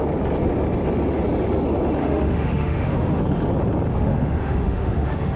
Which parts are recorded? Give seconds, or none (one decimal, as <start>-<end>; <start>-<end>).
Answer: 0.0-2.0; 3.2-3.9